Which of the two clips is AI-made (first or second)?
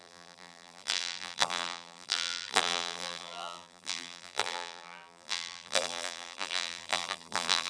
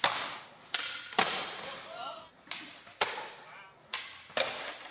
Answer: first